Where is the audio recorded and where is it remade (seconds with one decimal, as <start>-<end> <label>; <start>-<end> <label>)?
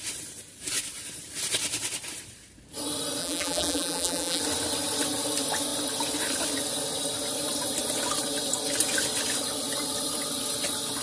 0.0-3.2 recorded; 3.2-4.4 remade; 4.4-11.0 recorded